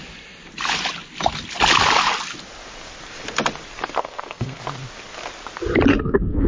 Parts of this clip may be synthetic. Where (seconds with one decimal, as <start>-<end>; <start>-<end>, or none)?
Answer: 4.0-4.6; 5.9-6.5